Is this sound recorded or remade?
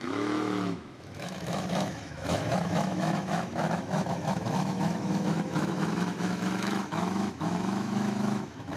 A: remade